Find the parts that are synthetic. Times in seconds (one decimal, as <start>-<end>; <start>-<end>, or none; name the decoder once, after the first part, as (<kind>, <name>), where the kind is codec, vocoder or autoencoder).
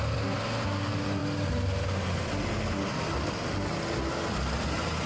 none